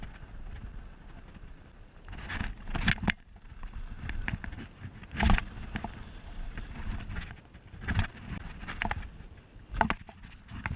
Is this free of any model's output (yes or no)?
yes